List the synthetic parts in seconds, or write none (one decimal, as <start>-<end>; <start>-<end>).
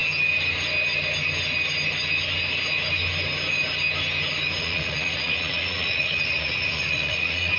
4.6-7.6